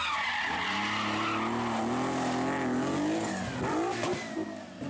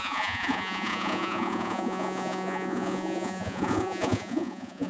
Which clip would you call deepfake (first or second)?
second